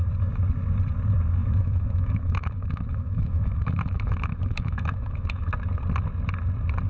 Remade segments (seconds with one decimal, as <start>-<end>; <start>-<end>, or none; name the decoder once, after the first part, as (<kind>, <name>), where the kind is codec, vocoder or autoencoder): 1.4-5.5 (autoencoder, DAC-VAE)